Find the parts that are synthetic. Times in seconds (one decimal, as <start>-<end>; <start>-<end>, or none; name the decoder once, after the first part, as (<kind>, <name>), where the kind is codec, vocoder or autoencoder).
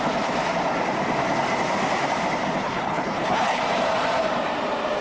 2.6-3.6 (codec, HILCodec)